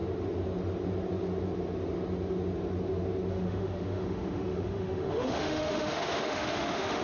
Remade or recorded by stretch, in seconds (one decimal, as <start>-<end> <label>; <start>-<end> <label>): 0.0-3.3 recorded; 3.3-7.0 remade